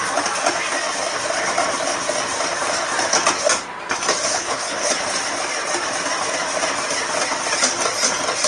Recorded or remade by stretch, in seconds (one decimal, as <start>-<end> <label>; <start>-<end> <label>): 0.0-4.3 recorded; 4.3-4.9 remade; 4.9-8.5 recorded